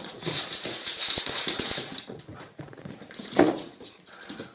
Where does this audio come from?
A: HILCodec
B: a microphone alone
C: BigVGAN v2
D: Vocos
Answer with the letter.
D